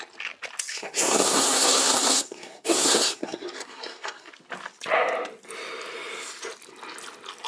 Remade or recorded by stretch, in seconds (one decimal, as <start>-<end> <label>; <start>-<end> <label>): 0.0-0.7 recorded; 0.7-4.3 remade; 4.3-7.5 recorded